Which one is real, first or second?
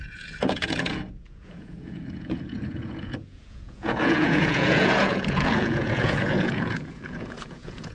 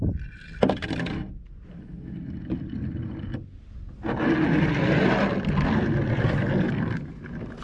second